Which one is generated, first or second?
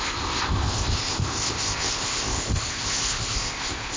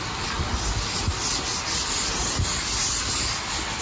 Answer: first